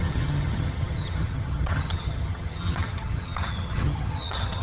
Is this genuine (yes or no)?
no